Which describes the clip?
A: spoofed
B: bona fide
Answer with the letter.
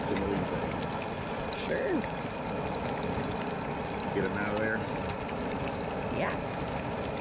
B